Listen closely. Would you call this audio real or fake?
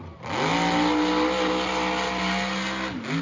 real